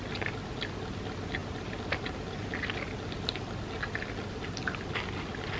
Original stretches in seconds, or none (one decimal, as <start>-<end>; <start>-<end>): 0.0-5.6